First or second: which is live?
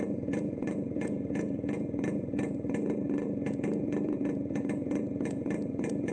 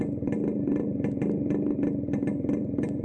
second